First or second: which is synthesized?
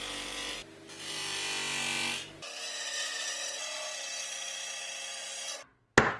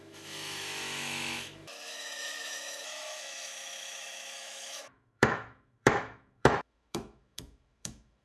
second